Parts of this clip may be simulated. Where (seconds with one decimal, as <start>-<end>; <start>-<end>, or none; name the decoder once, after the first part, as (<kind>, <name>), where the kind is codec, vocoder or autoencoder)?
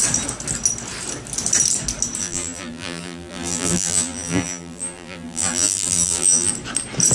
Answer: 2.2-6.5 (vocoder, BigVGAN v2)